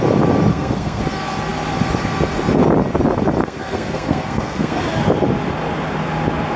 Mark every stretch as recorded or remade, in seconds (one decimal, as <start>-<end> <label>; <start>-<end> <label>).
0.0-0.5 recorded; 0.5-1.0 remade; 1.0-3.4 recorded; 3.4-4.8 remade; 4.8-6.6 recorded